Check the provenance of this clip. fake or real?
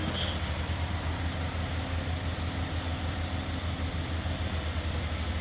real